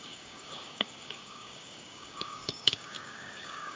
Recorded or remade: remade